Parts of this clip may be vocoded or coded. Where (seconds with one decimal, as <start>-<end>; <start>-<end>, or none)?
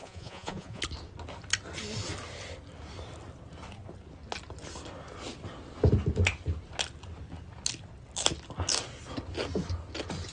0.0-0.8